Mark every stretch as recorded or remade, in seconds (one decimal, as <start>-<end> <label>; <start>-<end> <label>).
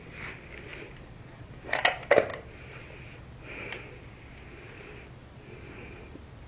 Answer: 0.0-6.5 recorded